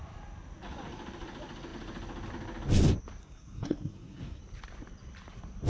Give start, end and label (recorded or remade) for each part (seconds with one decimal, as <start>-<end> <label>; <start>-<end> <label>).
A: 0.0-3.2 recorded; 3.2-4.4 remade; 4.4-5.7 recorded